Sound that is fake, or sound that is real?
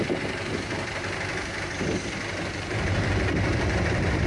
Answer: fake